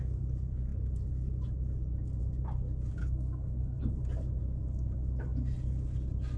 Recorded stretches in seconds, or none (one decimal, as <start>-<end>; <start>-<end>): 0.0-3.0; 3.8-6.4